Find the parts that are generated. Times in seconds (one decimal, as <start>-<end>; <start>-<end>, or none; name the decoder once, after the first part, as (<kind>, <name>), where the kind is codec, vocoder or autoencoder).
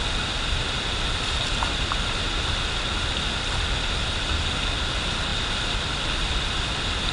none